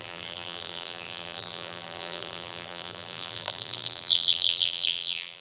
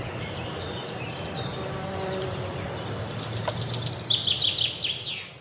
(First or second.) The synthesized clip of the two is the first